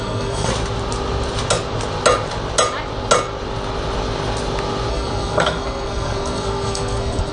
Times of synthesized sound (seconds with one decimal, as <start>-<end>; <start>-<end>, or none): 0.0-0.5; 4.9-7.3

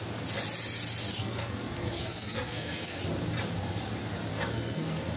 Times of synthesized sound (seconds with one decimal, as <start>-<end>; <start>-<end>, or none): 1.2-3.0; 4.3-5.2

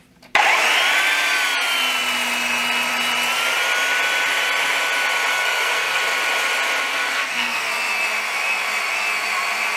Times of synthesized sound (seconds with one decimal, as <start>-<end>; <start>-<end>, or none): 5.3-6.0; 6.9-7.7